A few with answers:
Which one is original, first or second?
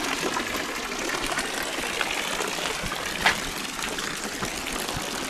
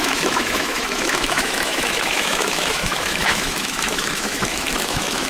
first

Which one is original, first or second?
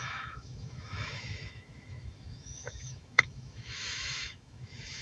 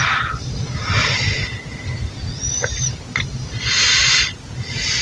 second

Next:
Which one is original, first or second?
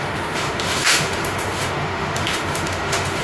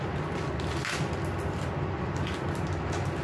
second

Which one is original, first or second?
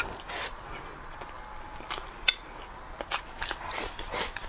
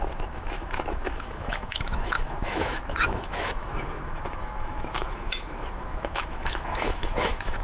first